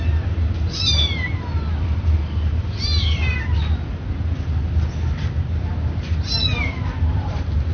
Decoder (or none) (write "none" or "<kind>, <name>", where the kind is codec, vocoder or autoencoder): none